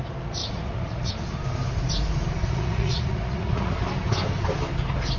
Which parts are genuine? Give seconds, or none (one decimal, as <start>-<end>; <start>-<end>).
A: 0.0-0.4; 1.1-2.4; 3.8-5.2